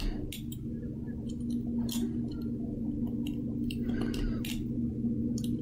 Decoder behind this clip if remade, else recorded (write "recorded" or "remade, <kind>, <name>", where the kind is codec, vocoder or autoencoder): recorded